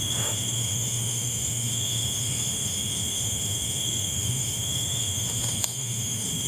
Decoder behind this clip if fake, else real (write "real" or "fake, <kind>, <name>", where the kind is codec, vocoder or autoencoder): fake, autoencoder, DAC-VAE